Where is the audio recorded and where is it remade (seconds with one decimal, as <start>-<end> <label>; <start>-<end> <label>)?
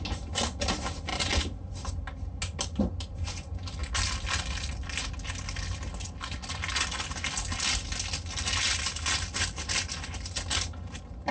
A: 0.0-11.3 recorded